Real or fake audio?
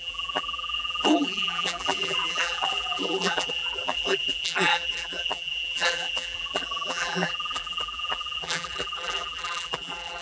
fake